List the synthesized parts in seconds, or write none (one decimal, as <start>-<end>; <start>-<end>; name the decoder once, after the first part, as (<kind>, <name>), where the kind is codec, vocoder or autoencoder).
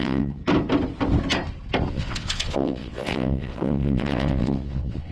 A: 0.0-0.4 (vocoder, WaveNeXt); 1.9-5.1